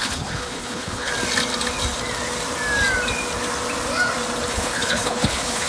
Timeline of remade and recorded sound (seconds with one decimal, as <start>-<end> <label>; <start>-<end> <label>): 0.0-1.1 remade; 1.1-4.5 recorded; 4.5-5.7 remade